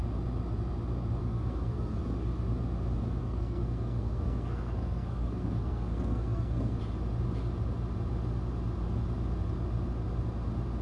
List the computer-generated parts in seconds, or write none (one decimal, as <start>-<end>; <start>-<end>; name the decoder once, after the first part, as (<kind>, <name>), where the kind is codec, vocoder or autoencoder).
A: 1.2-2.0 (codec, SNAC); 3.2-6.8